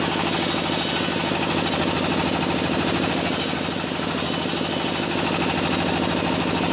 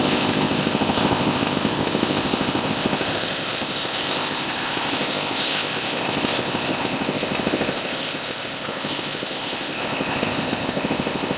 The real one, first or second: first